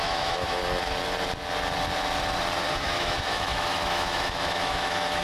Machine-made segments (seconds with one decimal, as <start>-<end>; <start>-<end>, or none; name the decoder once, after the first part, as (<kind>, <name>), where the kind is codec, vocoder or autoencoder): 0.0-0.6 (autoencoder, DAC-VAE); 2.7-5.2